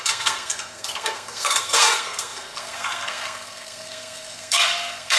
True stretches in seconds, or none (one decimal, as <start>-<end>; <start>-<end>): none